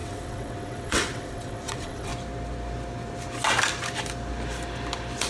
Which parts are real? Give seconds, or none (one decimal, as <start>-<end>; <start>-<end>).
2.1-5.3